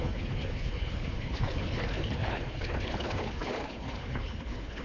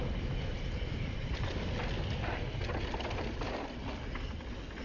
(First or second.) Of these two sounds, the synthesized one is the first